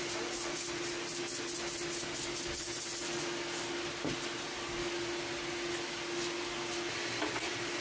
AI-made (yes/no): no